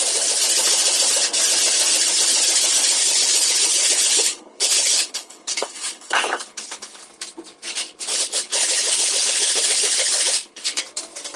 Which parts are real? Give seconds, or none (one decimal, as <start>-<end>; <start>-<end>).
0.0-3.0; 7.0-8.1; 10.8-11.4